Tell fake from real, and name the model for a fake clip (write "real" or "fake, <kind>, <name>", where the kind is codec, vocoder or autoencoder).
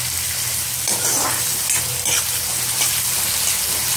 real